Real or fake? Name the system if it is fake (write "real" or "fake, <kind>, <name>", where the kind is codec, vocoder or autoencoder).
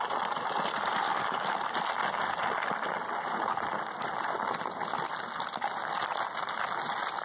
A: real